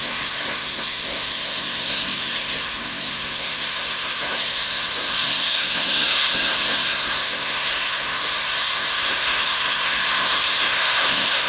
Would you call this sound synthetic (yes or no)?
yes